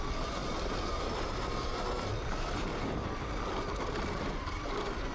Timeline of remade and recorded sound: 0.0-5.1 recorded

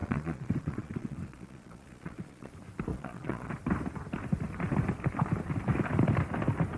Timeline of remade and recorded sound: 0.0-2.5 remade; 2.5-2.9 recorded; 2.9-3.5 remade; 3.5-6.8 recorded